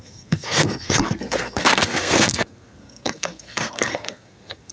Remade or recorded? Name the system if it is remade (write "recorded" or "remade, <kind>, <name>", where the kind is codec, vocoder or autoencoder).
remade, codec, SNAC